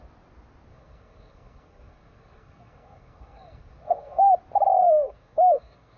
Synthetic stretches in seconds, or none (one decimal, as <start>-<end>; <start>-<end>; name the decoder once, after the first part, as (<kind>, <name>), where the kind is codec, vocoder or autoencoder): 0.7-4.3 (codec, SNAC); 4.8-6.0